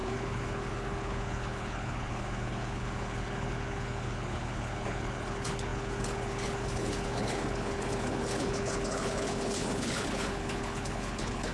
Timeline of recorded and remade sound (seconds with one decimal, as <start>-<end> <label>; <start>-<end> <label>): 0.0-11.5 remade